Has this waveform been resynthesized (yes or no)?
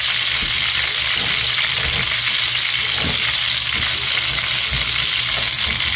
no